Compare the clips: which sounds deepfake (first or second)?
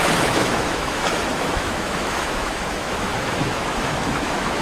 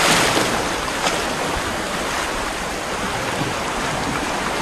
first